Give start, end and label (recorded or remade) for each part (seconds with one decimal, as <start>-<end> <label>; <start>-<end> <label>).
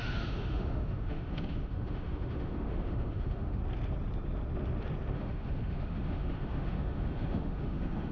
0.0-3.6 remade; 3.6-5.1 recorded; 5.1-8.1 remade